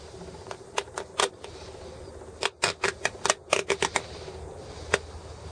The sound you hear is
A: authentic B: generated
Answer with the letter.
A